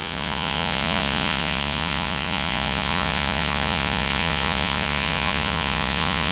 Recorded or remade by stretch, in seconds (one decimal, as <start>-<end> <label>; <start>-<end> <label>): 0.0-6.3 remade